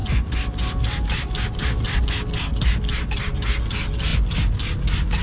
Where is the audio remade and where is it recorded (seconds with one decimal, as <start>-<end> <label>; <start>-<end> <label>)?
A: 0.0-2.0 remade; 2.0-2.5 recorded; 2.5-3.2 remade; 3.2-5.2 recorded